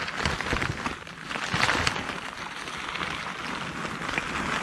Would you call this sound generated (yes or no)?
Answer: no